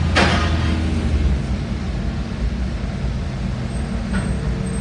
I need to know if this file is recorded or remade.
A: recorded